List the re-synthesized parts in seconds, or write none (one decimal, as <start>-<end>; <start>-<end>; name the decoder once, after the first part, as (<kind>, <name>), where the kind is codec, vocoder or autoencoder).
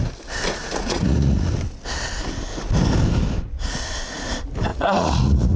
0.6-1.5 (vocoder, Vocos); 4.7-5.6